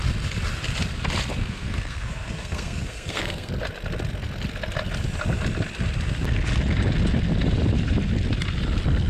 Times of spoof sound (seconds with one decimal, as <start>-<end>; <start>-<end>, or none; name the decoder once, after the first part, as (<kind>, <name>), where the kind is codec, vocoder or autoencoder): 1.4-3.5 (codec, SNAC)